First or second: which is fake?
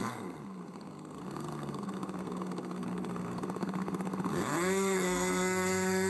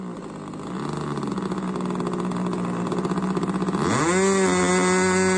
first